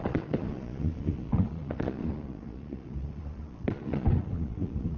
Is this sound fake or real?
fake